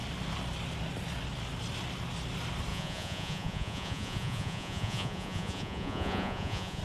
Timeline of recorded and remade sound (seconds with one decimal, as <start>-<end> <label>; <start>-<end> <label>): 0.0-2.7 recorded; 2.7-6.8 remade